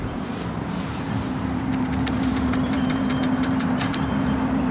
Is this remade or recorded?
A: remade